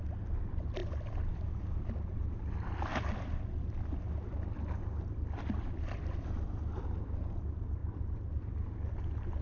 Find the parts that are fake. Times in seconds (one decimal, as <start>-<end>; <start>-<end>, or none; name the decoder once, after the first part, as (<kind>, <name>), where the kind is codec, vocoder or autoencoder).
none